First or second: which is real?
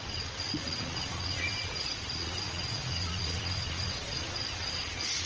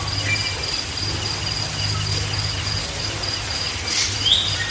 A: second